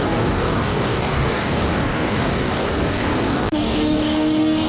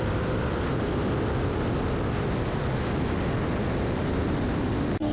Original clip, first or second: second